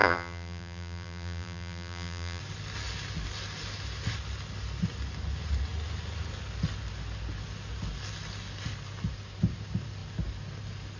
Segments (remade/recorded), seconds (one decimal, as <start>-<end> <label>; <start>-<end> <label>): 0.0-2.4 remade; 2.4-11.0 recorded